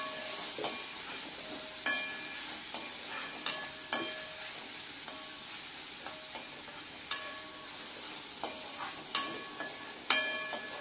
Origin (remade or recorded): recorded